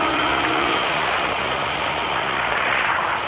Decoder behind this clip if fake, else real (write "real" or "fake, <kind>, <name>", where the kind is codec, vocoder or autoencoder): fake, vocoder, Vocos